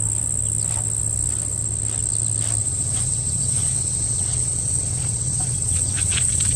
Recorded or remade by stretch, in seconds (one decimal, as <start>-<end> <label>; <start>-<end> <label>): 0.0-2.6 recorded; 2.6-6.6 remade